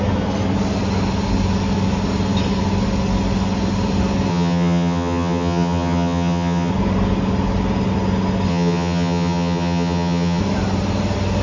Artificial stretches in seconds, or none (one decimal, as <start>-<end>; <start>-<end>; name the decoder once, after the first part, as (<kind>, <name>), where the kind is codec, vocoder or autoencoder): 4.3-6.7 (vocoder, HiFi-GAN); 8.5-10.4